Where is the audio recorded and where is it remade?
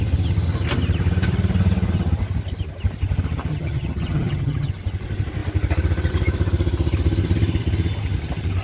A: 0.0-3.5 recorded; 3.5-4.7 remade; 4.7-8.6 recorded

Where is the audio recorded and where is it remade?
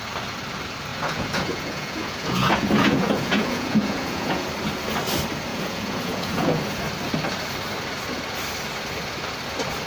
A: 0.0-0.9 recorded; 0.9-4.5 remade; 4.5-5.5 recorded; 5.5-6.8 remade; 6.8-9.9 recorded